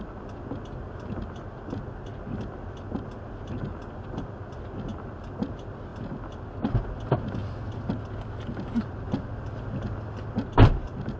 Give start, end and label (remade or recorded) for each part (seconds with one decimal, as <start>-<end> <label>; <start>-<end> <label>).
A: 0.0-11.2 recorded